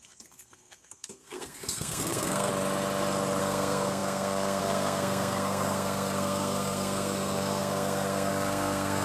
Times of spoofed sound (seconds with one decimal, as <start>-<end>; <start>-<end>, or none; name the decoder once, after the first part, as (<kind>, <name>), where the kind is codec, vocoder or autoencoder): 0.0-2.5 (codec, SNAC); 3.4-9.0

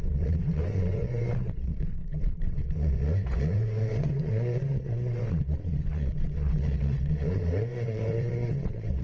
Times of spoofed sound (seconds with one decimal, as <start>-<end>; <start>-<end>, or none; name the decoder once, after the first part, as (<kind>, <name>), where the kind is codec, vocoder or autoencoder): 0.0-9.0 (vocoder, WaveNeXt)

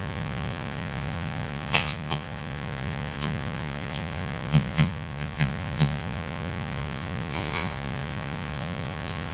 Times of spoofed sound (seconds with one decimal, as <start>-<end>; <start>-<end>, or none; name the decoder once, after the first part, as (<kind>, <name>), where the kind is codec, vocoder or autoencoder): 0.0-9.3 (vocoder, Vocos)

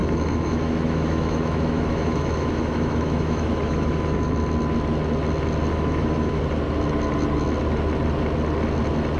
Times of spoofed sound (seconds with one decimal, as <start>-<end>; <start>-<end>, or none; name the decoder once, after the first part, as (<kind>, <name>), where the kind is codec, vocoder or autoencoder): 0.0-4.3 (autoencoder, DAC-VAE); 5.7-6.4

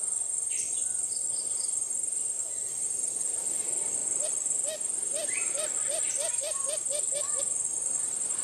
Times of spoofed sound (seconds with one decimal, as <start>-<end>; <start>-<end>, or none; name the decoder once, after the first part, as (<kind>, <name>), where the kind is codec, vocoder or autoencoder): none

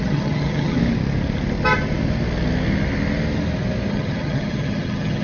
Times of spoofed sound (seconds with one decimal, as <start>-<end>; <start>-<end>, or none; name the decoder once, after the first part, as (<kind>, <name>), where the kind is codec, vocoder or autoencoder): 0.0-0.8 (vocoder, HiFi-GAN); 3.9-5.2

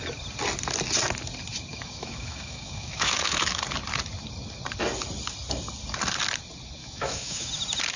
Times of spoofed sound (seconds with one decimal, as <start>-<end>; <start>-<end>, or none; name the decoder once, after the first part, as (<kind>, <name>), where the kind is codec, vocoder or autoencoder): 1.7-3.6 (autoencoder, DAC-VAE); 6.8-7.5